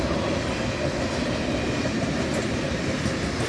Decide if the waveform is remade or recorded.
recorded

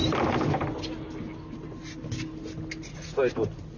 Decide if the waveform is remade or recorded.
recorded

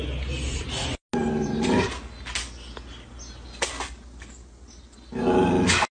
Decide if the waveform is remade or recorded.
recorded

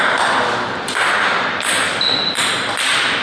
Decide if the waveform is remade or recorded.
recorded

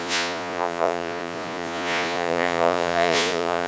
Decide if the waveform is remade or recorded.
remade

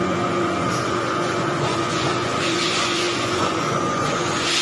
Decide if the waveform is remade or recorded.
remade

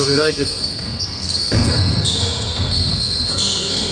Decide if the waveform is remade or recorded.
remade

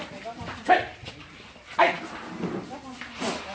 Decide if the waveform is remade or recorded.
recorded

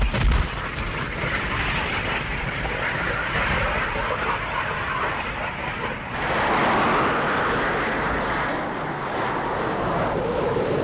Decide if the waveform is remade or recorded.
recorded